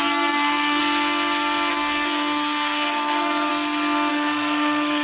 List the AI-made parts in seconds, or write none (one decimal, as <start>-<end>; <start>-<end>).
0.0-0.8; 1.7-3.5; 4.1-5.0